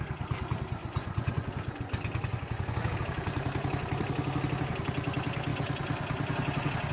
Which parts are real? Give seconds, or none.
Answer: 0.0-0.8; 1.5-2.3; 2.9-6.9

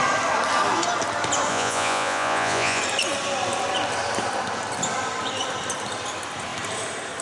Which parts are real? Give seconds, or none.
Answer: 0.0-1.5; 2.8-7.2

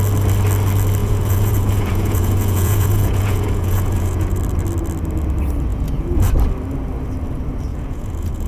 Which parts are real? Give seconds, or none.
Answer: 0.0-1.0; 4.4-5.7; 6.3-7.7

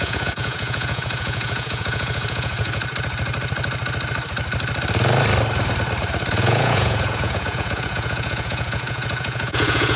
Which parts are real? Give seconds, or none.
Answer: 2.8-6.3

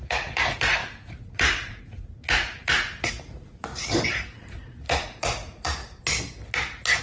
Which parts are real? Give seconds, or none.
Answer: 3.7-4.4; 5.8-7.0

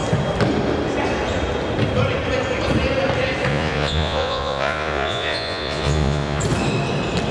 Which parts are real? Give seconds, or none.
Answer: 0.0-3.5; 6.4-7.3

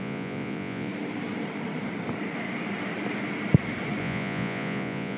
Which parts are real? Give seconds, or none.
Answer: 0.9-4.0